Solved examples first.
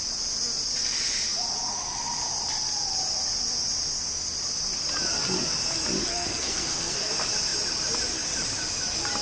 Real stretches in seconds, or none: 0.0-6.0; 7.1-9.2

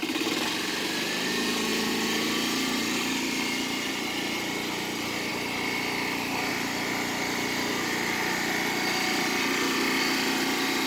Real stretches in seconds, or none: 0.0-10.9

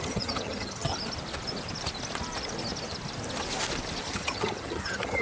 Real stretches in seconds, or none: 0.9-4.0

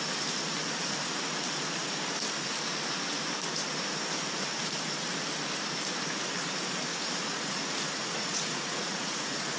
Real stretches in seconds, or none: 0.0-6.9

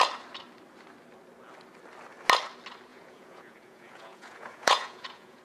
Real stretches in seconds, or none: 0.0-2.9

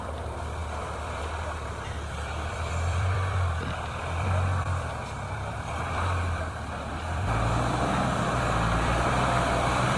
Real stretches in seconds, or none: none

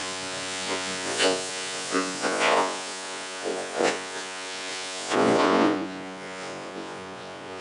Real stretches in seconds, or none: none

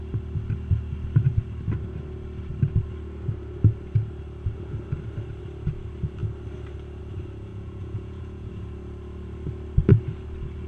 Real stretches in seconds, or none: 0.0-7.5; 8.5-10.7